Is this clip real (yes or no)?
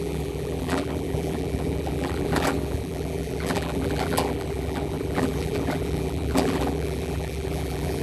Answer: no